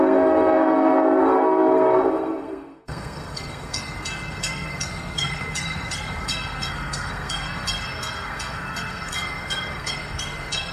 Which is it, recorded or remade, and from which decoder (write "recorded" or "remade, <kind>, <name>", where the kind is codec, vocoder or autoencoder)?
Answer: remade, codec, SNAC